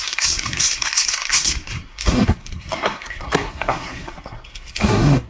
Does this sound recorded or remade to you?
remade